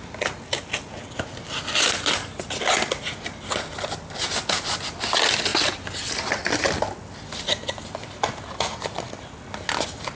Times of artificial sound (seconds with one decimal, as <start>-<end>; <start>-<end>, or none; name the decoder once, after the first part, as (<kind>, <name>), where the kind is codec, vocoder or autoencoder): none